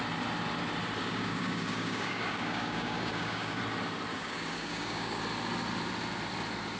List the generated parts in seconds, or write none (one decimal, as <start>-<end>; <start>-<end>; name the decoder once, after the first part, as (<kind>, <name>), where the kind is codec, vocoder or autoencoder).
1.0-3.6 (codec, DAC); 4.1-5.2